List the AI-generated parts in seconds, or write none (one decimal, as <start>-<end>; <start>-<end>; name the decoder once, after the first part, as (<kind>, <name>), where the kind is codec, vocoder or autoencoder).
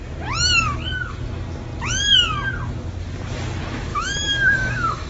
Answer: 3.9-5.1 (autoencoder, DAC-VAE)